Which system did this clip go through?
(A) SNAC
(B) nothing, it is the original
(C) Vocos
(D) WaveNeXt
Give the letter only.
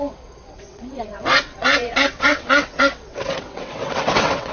D